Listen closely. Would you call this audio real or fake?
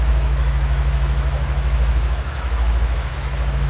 fake